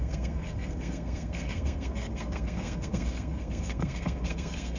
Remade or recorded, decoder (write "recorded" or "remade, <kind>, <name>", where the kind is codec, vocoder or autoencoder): remade, codec, SNAC